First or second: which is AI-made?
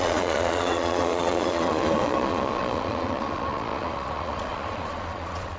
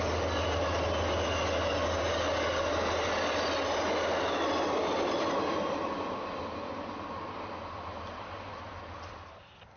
first